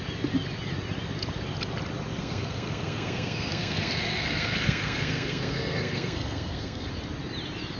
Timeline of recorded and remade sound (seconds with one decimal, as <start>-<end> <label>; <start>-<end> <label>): 0.0-2.2 recorded; 2.2-6.9 remade; 6.9-7.8 recorded